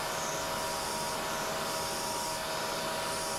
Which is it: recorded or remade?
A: recorded